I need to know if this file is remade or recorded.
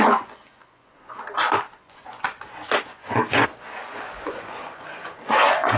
remade